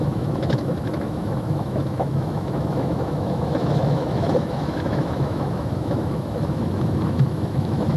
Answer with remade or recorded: remade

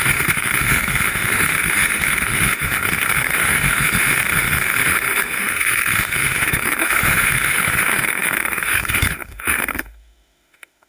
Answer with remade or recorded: remade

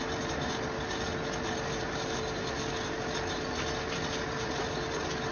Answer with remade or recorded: recorded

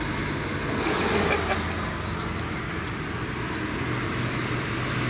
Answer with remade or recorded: recorded